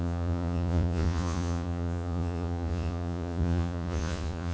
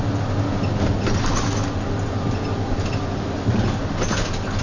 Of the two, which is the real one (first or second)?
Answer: second